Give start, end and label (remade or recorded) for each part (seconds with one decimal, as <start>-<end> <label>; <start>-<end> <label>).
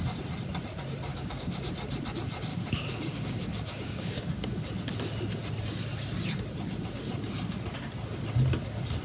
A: 0.0-1.1 recorded; 1.1-1.7 remade; 1.7-2.5 recorded; 2.5-4.6 remade; 4.6-9.0 recorded